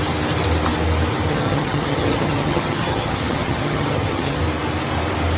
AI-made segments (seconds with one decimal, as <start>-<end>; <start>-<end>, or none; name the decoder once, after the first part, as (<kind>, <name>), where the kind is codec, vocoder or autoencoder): 1.3-4.4 (vocoder, HiFi-GAN)

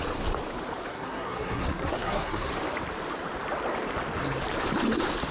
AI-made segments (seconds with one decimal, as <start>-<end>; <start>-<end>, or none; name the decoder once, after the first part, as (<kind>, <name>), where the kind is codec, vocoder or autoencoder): 0.9-2.5 (codec, SNAC)

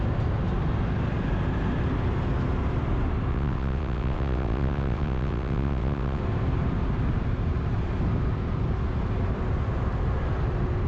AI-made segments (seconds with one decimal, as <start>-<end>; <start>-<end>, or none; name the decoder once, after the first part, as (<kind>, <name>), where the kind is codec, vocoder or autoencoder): 3.3-6.2 (vocoder, WaveNeXt)